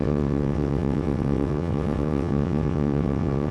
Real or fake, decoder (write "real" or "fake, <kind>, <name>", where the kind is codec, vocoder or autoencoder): fake, vocoder, WaveNeXt